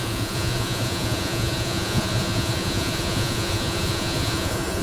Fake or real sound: fake